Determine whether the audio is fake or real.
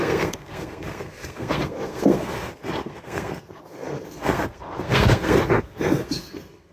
fake